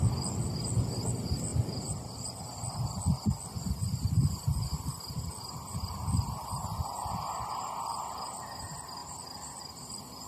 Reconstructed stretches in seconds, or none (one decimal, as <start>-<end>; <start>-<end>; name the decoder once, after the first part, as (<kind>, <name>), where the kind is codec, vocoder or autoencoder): 1.5-2.2 (vocoder, BigVGAN v2)